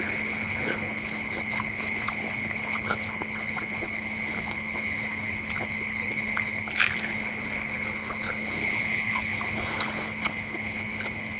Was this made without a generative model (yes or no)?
no